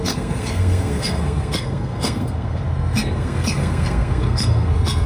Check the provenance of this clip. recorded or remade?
remade